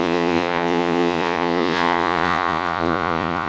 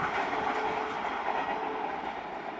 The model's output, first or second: first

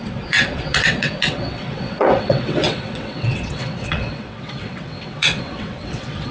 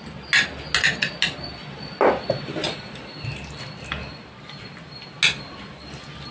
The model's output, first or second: first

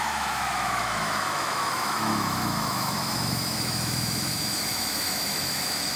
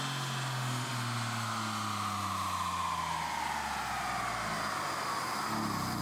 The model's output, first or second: first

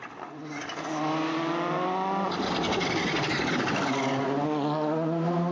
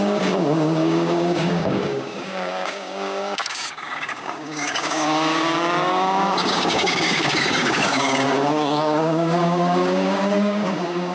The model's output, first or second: second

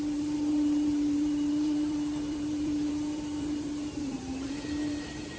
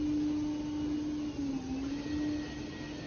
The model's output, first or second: first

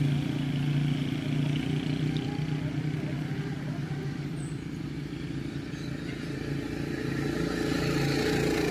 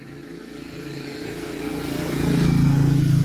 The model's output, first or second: second